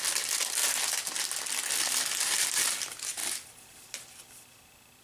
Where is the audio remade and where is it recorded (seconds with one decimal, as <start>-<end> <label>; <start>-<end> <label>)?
0.0-0.6 remade; 0.6-2.2 recorded; 2.2-5.0 remade